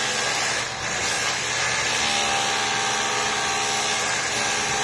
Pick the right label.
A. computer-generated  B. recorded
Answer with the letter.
B